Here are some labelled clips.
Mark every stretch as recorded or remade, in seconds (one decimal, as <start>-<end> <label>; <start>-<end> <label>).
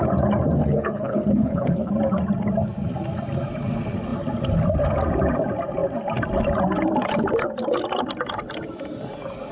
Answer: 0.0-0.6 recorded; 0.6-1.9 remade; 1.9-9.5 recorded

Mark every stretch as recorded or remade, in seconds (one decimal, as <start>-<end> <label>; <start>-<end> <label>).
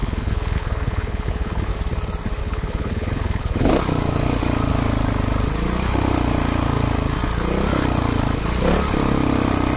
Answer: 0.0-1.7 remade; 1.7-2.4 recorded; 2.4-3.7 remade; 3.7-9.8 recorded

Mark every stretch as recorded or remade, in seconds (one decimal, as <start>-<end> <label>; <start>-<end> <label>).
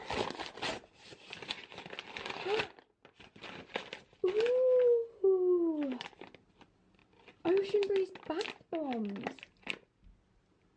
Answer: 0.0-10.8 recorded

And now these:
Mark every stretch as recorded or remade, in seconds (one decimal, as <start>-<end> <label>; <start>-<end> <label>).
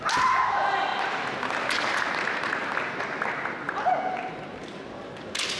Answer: 0.0-5.6 recorded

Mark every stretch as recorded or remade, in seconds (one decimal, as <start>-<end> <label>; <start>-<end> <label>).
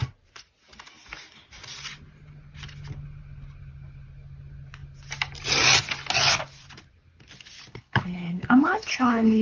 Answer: 0.0-7.7 recorded; 7.7-9.4 remade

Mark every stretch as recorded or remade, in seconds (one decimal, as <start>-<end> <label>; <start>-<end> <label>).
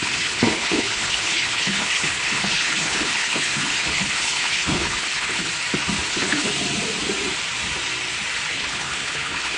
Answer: 0.0-5.5 remade; 5.5-6.1 recorded; 6.1-6.5 remade; 6.5-8.5 recorded; 8.5-9.6 remade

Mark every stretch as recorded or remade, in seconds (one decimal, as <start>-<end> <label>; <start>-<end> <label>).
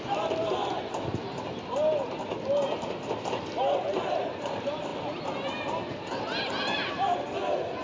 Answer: 0.0-7.8 recorded